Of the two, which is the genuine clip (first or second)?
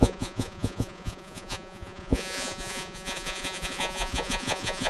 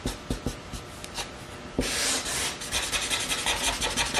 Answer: second